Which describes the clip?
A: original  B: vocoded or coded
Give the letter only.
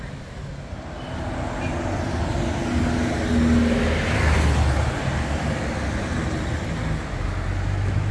A